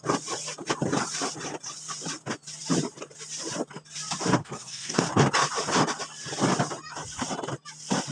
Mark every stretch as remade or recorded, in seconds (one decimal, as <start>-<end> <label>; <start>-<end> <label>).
0.0-4.4 recorded; 4.4-5.0 remade; 5.0-8.1 recorded